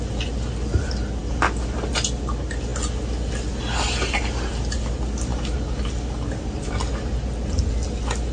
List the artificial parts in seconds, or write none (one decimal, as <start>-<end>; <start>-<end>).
none